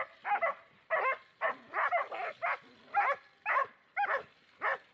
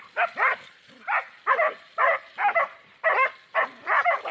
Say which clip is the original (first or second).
first